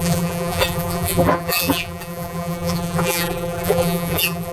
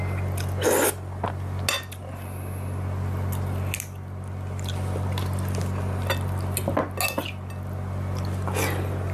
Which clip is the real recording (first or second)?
second